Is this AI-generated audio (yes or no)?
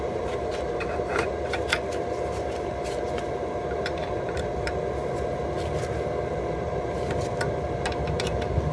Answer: yes